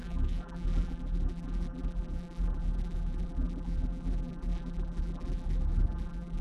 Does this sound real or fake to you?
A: fake